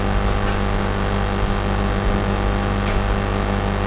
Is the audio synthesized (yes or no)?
no